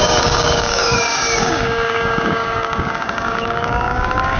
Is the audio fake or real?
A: fake